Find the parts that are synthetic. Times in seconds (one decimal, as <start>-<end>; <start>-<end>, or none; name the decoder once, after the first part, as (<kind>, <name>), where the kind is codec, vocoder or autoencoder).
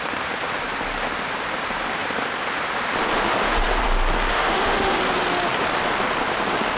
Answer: 4.3-5.0 (autoencoder, DAC-VAE)